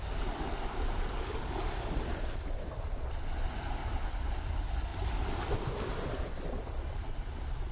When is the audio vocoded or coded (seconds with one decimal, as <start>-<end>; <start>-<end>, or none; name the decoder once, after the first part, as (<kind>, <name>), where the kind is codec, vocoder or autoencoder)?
none